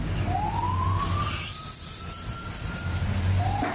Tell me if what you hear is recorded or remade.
recorded